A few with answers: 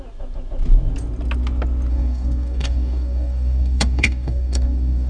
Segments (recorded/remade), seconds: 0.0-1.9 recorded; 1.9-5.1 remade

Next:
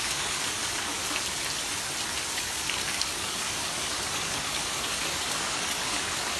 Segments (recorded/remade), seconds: 0.0-1.0 remade; 1.0-2.3 recorded; 2.3-6.4 remade